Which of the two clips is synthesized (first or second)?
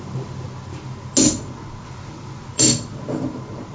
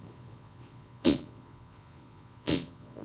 second